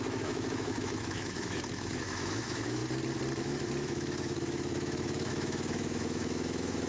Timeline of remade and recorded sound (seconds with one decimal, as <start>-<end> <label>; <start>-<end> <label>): 0.0-2.8 remade; 2.8-3.4 recorded; 3.4-6.9 remade

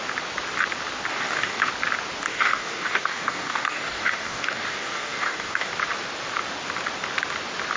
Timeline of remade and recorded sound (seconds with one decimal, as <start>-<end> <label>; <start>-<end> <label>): 0.0-1.1 recorded; 1.1-1.7 remade; 1.7-2.3 recorded; 2.3-5.7 remade; 5.7-7.8 recorded

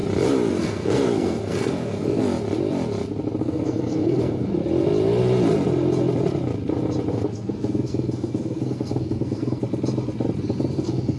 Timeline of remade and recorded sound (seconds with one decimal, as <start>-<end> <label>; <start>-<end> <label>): 0.0-0.5 recorded; 0.5-2.2 remade; 2.2-3.4 recorded; 3.4-4.5 remade; 4.5-7.1 recorded; 7.1-9.6 remade; 9.6-10.7 recorded; 10.7-11.2 remade

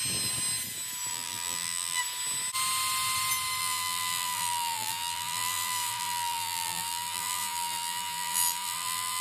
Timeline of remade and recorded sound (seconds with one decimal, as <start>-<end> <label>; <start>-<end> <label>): 0.0-1.1 recorded; 1.1-2.0 remade; 2.0-3.6 recorded; 3.6-9.2 remade

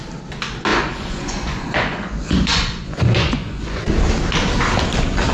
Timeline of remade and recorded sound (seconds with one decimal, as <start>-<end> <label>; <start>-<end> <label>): 0.0-0.7 recorded; 0.7-3.9 remade; 3.9-5.3 recorded

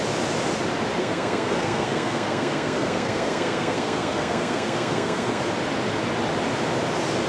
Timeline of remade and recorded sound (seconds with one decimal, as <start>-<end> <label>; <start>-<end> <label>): 0.0-1.0 recorded; 1.0-5.4 remade; 5.4-7.3 recorded